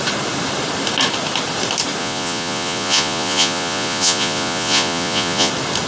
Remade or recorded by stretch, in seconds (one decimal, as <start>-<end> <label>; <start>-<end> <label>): 0.0-2.0 recorded; 2.0-5.5 remade; 5.5-5.9 recorded